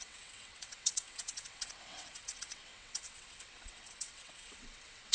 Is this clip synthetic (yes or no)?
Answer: yes